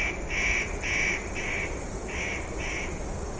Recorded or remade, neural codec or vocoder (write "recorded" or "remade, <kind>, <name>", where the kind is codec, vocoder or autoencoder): recorded